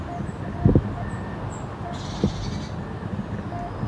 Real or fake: real